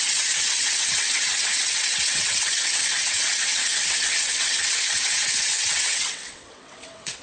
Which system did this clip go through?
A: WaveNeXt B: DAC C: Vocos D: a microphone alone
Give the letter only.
A